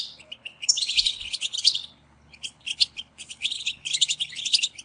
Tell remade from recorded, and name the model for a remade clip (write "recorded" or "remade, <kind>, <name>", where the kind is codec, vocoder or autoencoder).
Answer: remade, codec, HILCodec